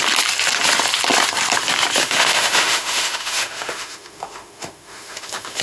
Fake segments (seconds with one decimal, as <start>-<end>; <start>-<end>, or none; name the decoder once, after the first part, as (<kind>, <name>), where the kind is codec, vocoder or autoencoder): 2.0-5.6 (autoencoder, DAC-VAE)